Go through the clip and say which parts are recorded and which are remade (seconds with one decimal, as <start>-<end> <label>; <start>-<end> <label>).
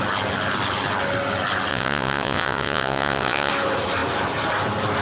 0.0-1.7 recorded; 1.7-3.5 remade; 3.5-5.0 recorded